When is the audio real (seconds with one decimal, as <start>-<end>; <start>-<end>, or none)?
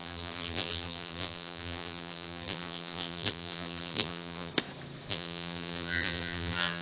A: 4.5-5.1